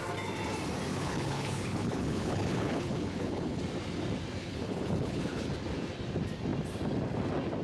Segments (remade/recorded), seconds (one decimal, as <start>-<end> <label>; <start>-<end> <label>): 0.0-0.9 recorded; 0.9-3.6 remade; 3.6-4.4 recorded; 4.4-5.5 remade; 5.5-7.6 recorded